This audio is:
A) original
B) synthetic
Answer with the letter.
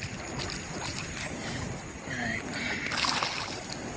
B